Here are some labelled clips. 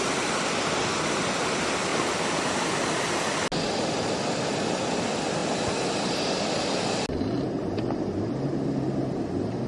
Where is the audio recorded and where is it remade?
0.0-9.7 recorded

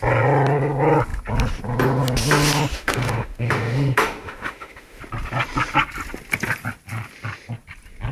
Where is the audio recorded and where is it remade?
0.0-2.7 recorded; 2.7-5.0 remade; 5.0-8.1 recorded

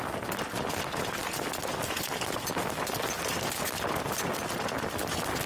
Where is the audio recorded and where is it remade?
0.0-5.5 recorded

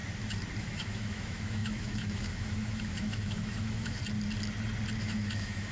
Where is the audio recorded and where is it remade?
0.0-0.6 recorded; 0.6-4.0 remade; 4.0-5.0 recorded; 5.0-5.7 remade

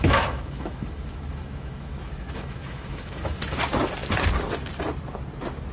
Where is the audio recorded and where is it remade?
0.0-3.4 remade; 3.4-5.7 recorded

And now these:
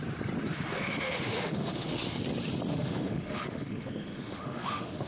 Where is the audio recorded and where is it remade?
0.0-0.5 recorded; 0.5-2.2 remade; 2.2-2.7 recorded; 2.7-5.1 remade

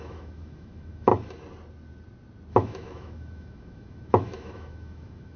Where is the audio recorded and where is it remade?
0.0-1.1 remade; 1.1-2.5 recorded; 2.5-5.4 remade

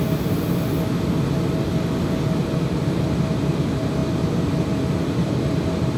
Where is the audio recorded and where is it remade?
0.0-6.0 recorded